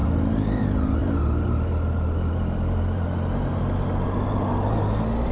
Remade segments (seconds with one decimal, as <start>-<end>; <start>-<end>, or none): none